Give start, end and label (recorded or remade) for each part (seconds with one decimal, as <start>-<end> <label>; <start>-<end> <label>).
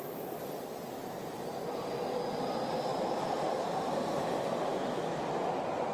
0.0-4.7 recorded; 4.7-5.2 remade; 5.2-5.9 recorded